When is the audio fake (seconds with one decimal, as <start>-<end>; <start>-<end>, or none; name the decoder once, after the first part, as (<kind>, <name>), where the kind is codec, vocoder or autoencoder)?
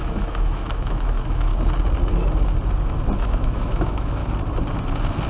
0.0-1.5 (autoencoder, DAC-VAE); 3.2-4.2